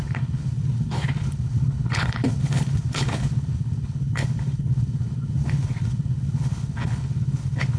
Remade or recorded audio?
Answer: remade